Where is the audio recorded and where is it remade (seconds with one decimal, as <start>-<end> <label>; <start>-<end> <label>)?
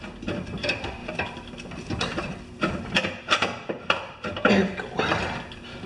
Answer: 0.0-1.0 recorded; 1.0-4.5 remade; 4.5-5.9 recorded